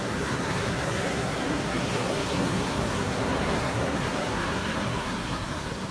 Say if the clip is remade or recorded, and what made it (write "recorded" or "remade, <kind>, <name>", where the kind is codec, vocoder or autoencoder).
remade, codec, SNAC